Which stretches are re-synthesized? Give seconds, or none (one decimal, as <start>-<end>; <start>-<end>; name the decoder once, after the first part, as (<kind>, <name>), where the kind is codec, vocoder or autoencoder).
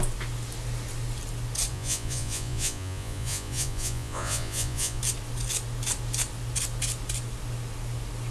1.7-5.0 (vocoder, Vocos)